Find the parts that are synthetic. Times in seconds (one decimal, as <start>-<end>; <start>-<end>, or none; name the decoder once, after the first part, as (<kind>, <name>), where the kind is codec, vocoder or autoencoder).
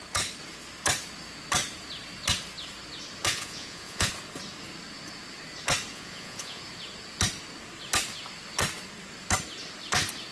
3.3-4.1 (vocoder, Vocos); 5.9-6.6